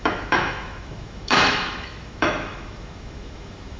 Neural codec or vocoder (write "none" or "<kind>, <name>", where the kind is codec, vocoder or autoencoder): autoencoder, DAC-VAE